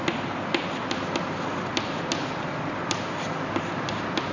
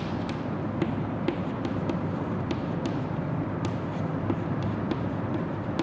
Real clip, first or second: first